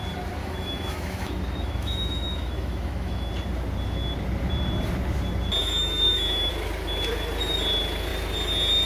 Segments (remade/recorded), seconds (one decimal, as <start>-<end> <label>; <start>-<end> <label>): 0.0-0.4 recorded; 0.4-3.3 remade; 3.3-5.6 recorded; 5.6-6.5 remade; 6.5-8.9 recorded